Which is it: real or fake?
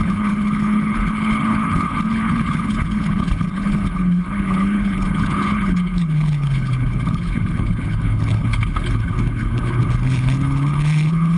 fake